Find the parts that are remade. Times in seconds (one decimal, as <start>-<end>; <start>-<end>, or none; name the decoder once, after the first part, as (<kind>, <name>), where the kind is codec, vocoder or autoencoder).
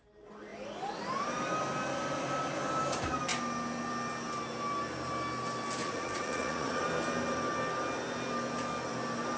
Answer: 5.8-6.8 (vocoder, Vocos)